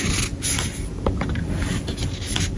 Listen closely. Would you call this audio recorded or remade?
recorded